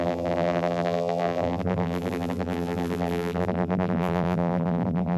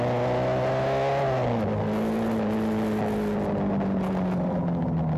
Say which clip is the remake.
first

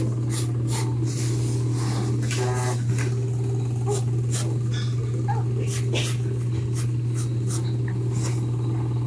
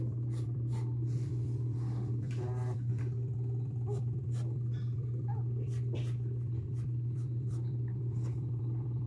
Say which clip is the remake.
second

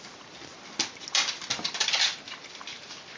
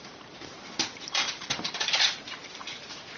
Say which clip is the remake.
second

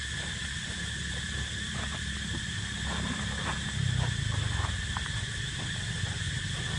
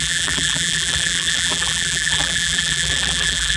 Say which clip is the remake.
second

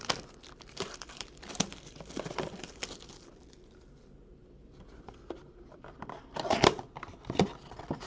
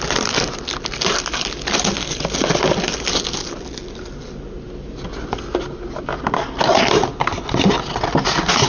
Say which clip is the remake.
first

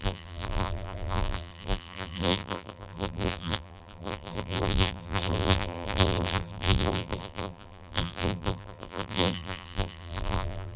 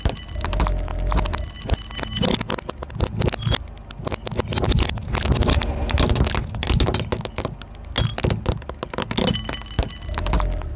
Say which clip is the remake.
first